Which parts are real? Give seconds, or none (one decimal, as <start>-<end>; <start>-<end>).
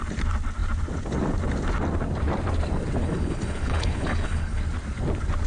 0.0-3.0; 4.6-5.5